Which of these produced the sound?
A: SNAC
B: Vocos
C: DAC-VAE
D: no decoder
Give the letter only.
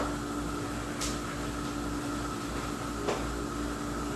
D